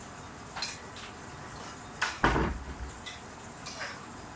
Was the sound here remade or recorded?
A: recorded